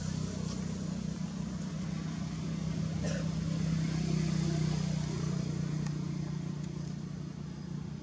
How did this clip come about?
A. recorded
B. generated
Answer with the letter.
A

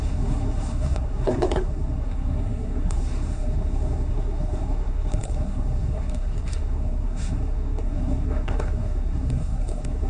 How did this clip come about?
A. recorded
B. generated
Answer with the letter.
B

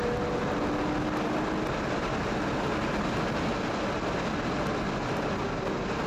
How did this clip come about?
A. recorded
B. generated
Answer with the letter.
A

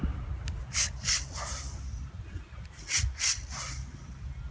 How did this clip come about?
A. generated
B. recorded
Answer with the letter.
B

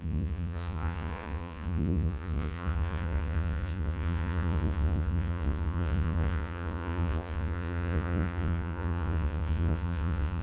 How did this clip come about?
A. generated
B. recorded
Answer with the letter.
A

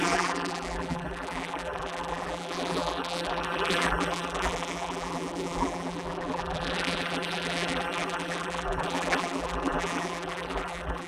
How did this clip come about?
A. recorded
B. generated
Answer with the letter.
B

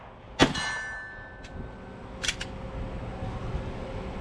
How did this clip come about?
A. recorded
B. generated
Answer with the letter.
A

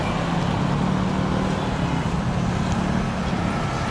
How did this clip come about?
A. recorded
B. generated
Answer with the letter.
A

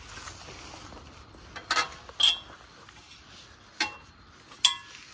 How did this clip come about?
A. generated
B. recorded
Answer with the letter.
B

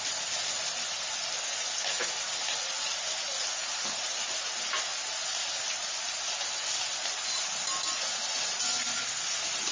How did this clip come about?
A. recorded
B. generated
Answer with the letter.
A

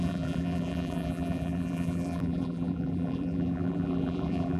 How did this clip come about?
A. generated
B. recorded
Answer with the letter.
A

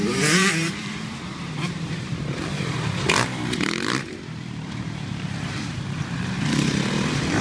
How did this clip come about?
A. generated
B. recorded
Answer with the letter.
A